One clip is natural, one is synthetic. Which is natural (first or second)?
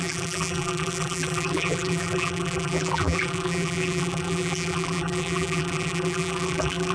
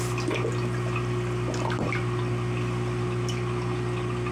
second